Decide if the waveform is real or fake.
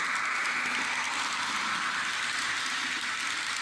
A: real